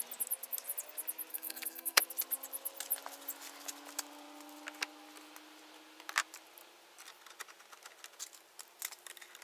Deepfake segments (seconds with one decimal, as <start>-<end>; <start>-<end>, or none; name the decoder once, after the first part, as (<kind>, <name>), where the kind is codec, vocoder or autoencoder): 1.3-2.0 (codec, SNAC)

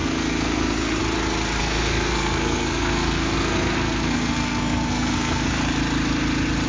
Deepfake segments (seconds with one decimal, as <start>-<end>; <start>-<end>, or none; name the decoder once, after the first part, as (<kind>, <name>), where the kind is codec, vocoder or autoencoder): 0.0-1.0 (codec, SNAC); 1.6-5.6

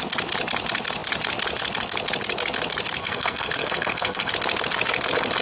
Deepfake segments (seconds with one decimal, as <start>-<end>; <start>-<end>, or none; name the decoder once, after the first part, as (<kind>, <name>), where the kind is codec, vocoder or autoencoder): 3.0-4.3 (codec, SNAC)